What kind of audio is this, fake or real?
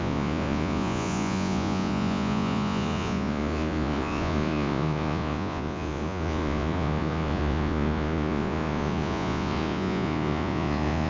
fake